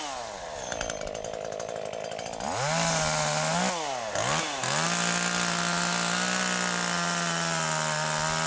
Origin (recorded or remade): recorded